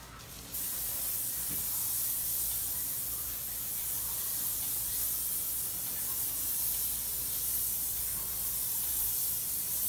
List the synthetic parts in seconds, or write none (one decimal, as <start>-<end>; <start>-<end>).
2.9-4.0